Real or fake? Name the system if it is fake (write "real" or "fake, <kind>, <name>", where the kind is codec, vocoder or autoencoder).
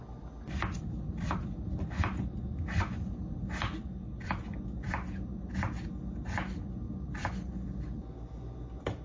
real